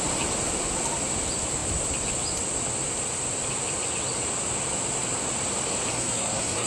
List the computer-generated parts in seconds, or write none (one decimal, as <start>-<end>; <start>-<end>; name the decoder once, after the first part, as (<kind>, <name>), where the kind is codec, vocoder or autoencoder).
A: 5.9-6.7 (codec, SNAC)